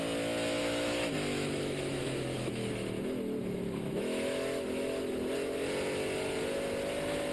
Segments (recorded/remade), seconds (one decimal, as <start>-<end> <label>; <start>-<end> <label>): 0.0-0.6 recorded; 0.6-5.0 remade; 5.0-7.3 recorded